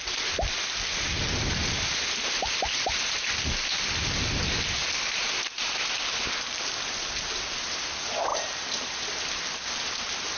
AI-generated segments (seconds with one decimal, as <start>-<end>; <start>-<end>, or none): 1.6-3.2; 8.3-9.0

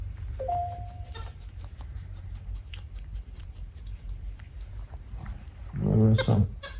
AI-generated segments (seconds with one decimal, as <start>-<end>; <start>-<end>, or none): 0.0-5.6; 6.3-6.8

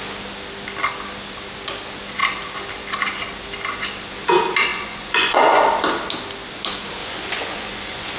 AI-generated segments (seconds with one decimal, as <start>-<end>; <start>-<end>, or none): 4.7-5.6; 7.0-8.2

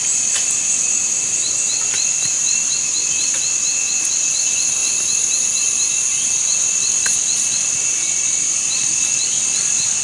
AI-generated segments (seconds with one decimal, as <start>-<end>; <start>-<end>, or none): none

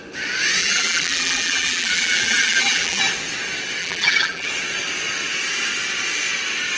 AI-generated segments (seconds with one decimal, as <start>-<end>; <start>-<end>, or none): 0.6-3.0; 3.8-4.5